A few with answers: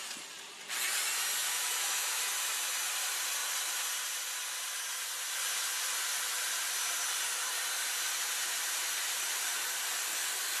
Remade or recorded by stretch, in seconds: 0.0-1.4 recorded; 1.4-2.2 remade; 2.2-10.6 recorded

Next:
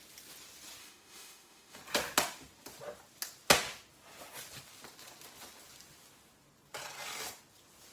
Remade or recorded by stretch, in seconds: 0.0-0.8 recorded; 0.8-1.8 remade; 1.8-7.9 recorded

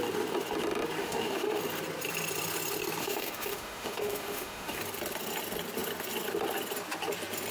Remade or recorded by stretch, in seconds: 0.0-1.0 recorded; 1.0-1.6 remade; 1.6-3.0 recorded; 3.0-4.8 remade; 4.8-7.5 recorded

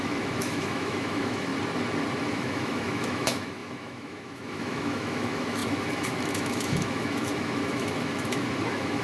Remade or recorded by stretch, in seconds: 0.0-1.5 remade; 1.5-2.3 recorded; 2.3-9.0 remade

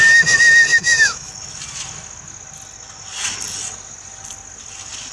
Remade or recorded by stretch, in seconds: 0.0-0.7 recorded; 0.7-1.3 remade; 1.3-5.1 recorded

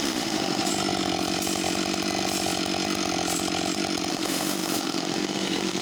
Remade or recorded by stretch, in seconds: 0.0-0.7 remade; 0.7-4.1 recorded; 4.1-5.8 remade